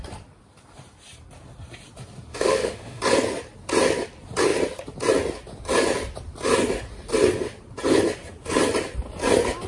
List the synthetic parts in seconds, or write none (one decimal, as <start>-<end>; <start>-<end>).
2.3-3.0